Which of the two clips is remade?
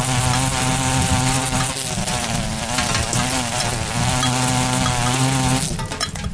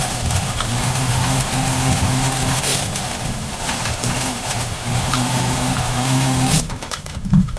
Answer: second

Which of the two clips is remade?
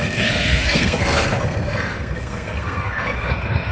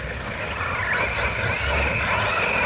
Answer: first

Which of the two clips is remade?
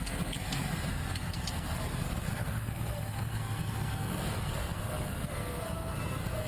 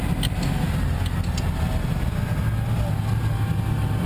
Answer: first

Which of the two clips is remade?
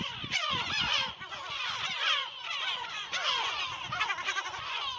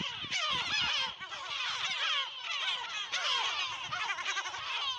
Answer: first